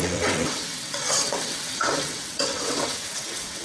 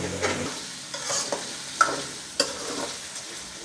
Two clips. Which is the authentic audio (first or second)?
second